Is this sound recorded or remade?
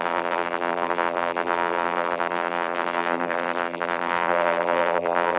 remade